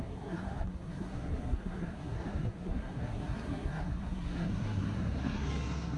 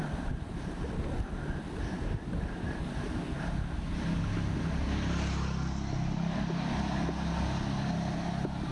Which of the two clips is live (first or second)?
second